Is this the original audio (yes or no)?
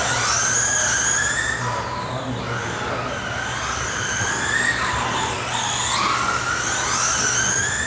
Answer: yes